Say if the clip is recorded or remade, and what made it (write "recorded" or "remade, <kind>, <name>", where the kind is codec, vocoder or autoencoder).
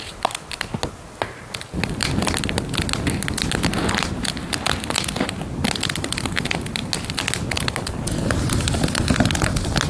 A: recorded